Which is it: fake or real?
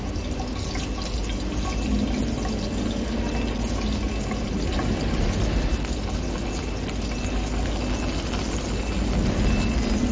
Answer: real